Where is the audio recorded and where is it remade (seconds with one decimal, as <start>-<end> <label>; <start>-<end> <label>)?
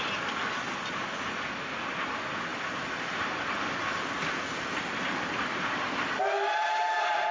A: 0.0-2.5 recorded; 2.5-6.2 remade; 6.2-7.3 recorded